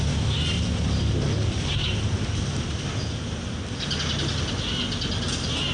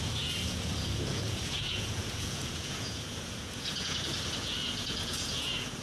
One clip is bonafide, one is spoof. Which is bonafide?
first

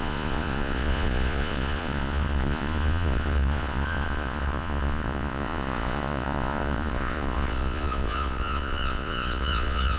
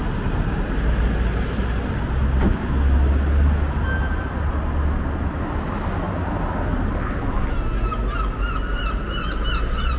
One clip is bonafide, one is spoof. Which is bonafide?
second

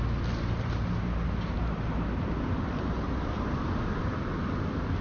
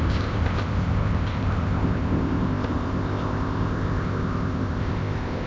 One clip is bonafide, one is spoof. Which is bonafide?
first